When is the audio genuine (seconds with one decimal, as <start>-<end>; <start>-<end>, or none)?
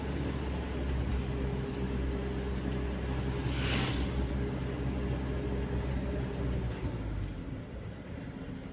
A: 0.0-8.7